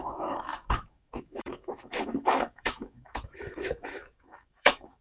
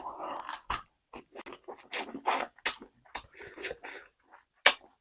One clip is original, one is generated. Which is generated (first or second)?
first